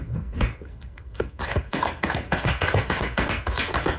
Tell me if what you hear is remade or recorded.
remade